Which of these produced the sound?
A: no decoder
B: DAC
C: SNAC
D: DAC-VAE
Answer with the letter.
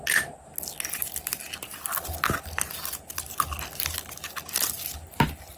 A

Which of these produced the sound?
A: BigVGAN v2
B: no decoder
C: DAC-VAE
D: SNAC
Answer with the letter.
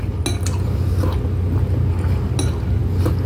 B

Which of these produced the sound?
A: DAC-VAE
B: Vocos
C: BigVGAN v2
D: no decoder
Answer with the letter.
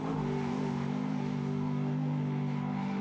A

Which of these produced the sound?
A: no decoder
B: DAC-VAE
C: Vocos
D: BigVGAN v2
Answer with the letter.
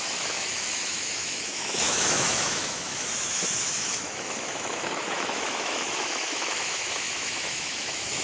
B